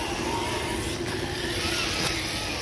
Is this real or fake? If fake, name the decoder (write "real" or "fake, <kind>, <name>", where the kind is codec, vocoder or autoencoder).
real